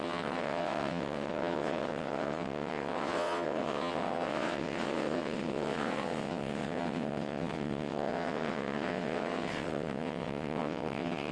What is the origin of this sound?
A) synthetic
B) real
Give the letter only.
A